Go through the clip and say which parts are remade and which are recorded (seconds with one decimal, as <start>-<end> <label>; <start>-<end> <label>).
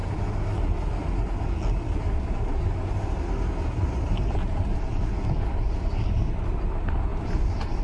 0.0-7.1 recorded; 7.1-7.8 remade